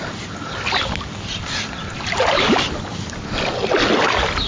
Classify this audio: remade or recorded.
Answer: recorded